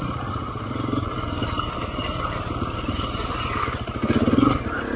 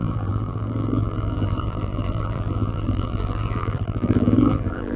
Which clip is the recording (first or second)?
first